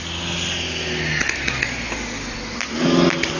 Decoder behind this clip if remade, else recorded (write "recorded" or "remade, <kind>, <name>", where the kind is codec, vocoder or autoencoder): recorded